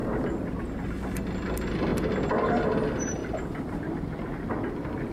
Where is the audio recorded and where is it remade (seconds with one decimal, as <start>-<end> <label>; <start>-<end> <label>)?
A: 0.0-0.6 remade; 0.6-3.2 recorded; 3.2-5.1 remade